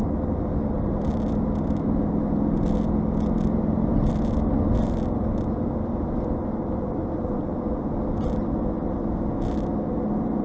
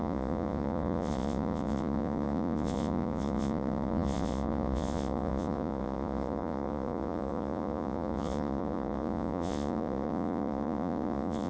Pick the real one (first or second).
first